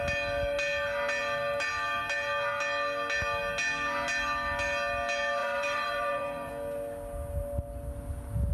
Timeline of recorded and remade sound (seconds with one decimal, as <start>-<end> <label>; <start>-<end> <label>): 0.0-5.4 recorded; 5.4-6.5 remade; 6.5-8.5 recorded

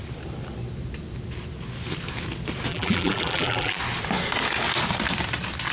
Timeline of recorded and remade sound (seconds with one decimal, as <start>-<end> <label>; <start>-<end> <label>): 0.0-2.7 recorded; 2.7-3.8 remade; 3.8-5.7 recorded

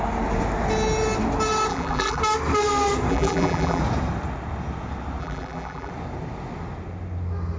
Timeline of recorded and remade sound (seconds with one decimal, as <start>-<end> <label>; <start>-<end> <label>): 0.0-1.7 recorded; 1.7-2.2 remade; 2.2-3.1 recorded; 3.1-3.8 remade; 3.8-5.2 recorded; 5.2-5.9 remade; 5.9-7.6 recorded

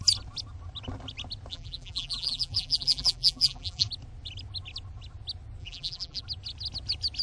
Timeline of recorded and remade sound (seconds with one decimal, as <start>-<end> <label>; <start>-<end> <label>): 0.0-1.5 recorded; 1.5-3.9 remade; 3.9-5.6 recorded; 5.6-6.2 remade; 6.2-7.2 recorded

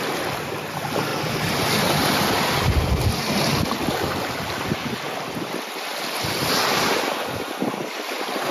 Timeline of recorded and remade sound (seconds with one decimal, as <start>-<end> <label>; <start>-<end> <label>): 0.0-8.5 recorded

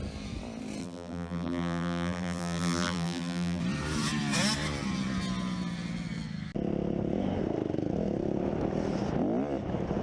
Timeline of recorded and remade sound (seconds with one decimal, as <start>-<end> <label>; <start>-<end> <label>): 0.0-0.8 recorded; 0.8-3.6 remade; 3.6-10.0 recorded

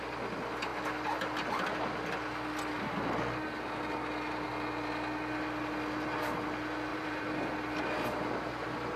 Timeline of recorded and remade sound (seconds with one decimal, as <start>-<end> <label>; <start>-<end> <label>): 0.0-6.9 recorded; 6.9-7.5 remade; 7.5-9.0 recorded